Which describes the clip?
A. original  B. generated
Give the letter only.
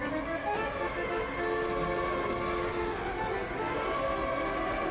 A